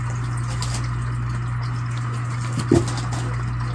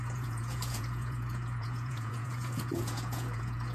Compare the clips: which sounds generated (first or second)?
second